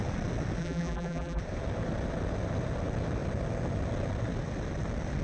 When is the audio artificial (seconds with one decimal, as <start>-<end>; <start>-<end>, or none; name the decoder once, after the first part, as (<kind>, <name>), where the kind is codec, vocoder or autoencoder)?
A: 0.6-1.4 (vocoder, BigVGAN v2)